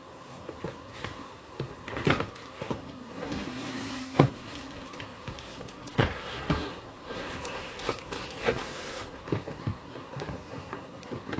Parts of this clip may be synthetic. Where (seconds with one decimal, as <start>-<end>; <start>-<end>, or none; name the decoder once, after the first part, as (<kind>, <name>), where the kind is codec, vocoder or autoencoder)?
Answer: 0.0-11.4 (codec, SNAC)